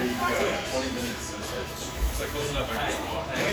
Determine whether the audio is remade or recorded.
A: remade